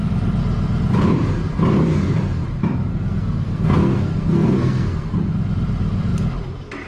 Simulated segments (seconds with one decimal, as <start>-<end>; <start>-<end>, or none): 2.9-5.1

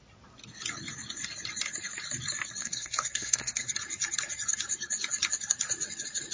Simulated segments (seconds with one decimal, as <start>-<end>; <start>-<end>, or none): 2.6-3.7

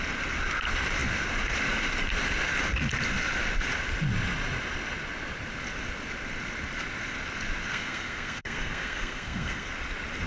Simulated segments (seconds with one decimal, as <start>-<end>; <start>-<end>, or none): 7.7-9.7

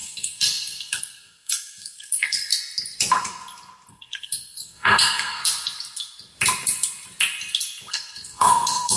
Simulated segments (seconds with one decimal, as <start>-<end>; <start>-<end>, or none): 0.0-2.5; 3.9-5.4; 7.9-9.0

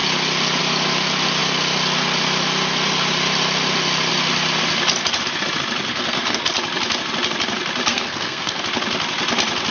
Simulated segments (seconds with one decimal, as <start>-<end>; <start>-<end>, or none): 5.9-6.4; 7.9-8.6

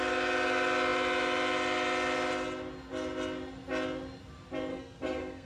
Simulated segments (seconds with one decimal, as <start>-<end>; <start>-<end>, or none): 4.7-5.5

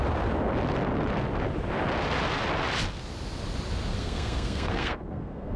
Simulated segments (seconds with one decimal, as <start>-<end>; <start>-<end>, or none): 3.9-5.6

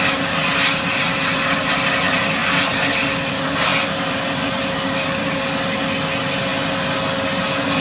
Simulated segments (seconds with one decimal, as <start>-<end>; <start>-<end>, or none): none